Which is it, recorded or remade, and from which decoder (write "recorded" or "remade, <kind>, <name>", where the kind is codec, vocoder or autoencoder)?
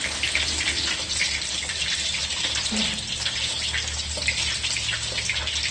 recorded